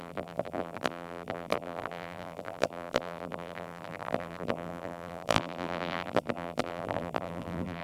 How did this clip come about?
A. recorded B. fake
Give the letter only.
B